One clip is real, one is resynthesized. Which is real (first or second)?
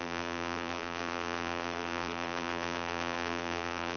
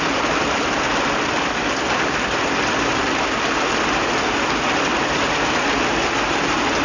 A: second